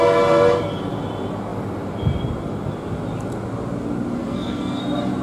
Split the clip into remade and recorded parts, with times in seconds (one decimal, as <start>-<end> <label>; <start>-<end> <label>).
0.0-4.2 recorded; 4.2-4.8 remade; 4.8-5.2 recorded